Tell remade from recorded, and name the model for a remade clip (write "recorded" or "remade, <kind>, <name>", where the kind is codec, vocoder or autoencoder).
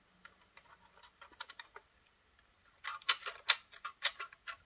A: recorded